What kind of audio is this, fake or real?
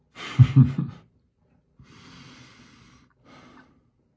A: real